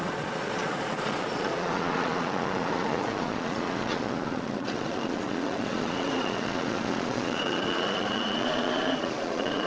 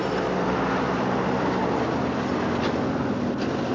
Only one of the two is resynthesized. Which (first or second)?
first